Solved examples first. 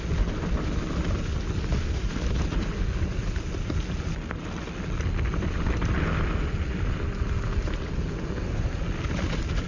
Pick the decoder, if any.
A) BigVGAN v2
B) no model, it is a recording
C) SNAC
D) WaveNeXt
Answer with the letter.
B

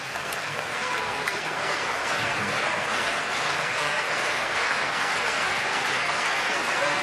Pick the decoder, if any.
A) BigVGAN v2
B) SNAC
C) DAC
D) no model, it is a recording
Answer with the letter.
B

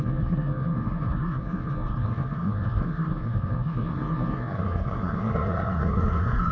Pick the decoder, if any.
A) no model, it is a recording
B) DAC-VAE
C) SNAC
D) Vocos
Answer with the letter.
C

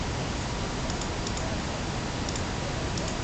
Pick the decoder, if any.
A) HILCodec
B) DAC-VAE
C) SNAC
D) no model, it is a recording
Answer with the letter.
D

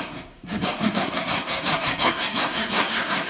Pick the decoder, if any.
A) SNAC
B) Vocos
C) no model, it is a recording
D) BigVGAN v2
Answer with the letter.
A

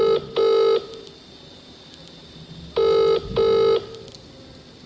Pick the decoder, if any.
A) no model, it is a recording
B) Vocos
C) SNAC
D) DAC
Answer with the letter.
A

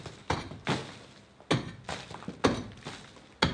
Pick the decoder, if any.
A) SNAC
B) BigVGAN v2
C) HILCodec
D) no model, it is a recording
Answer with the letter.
D